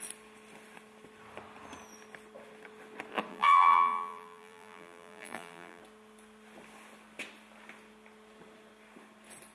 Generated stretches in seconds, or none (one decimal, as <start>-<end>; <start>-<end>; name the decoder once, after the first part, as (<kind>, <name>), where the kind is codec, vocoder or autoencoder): 3.3-5.8 (vocoder, BigVGAN v2)